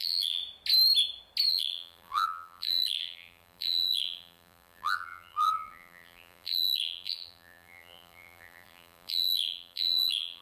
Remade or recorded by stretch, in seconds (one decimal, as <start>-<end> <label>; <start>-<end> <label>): 0.0-0.4 remade; 0.4-1.5 recorded; 1.5-10.4 remade